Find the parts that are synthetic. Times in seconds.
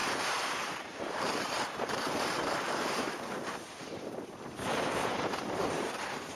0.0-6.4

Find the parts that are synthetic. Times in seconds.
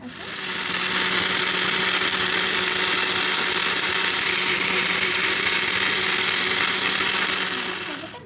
3.6-5.4